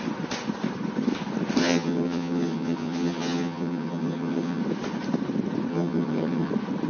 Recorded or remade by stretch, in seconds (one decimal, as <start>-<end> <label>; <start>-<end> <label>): 0.0-1.6 recorded; 1.6-4.6 remade; 4.6-5.7 recorded; 5.7-6.5 remade; 6.5-6.9 recorded